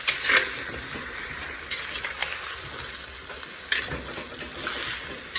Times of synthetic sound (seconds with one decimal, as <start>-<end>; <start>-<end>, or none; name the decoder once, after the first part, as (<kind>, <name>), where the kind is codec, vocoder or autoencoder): none